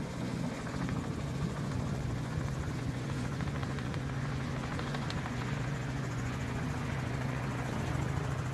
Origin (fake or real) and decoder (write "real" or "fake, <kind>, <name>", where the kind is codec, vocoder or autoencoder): fake, vocoder, Vocos